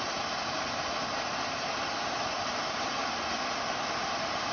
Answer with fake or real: real